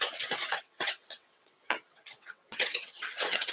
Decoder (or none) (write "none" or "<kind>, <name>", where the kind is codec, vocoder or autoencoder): vocoder, WaveNeXt